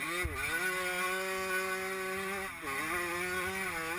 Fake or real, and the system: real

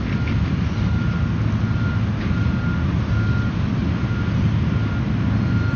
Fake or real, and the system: real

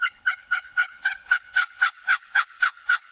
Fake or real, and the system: fake, codec, HILCodec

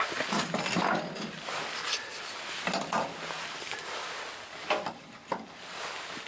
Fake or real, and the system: real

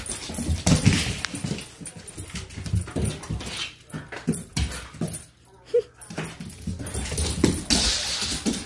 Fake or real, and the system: real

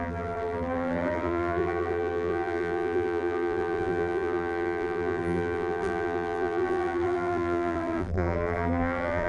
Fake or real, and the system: fake, vocoder, BigVGAN v2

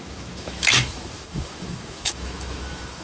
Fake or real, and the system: fake, autoencoder, DAC-VAE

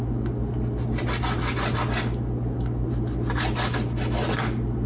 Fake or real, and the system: real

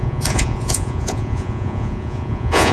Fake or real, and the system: fake, vocoder, Vocos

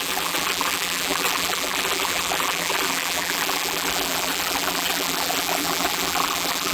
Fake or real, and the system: fake, vocoder, BigVGAN v2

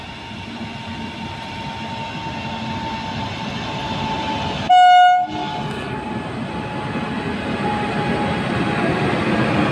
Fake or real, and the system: real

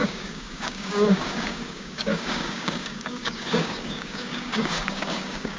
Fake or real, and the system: fake, codec, DAC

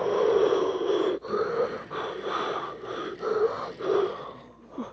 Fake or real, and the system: real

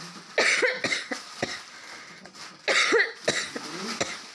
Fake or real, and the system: real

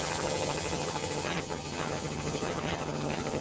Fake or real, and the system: fake, vocoder, HiFi-GAN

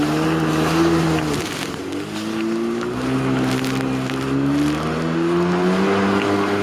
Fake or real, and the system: real